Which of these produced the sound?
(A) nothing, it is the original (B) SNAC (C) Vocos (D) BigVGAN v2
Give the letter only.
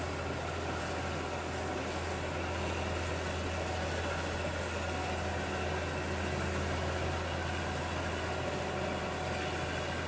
A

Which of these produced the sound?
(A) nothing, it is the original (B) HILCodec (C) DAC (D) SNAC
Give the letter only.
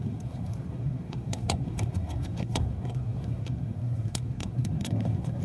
D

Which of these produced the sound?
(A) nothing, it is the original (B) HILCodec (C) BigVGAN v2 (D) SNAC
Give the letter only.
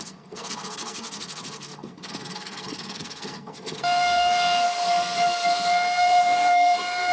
D